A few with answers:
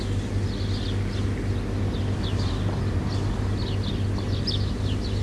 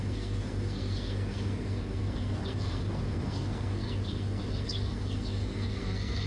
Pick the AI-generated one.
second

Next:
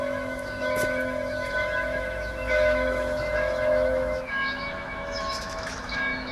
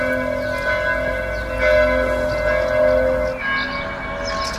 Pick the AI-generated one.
first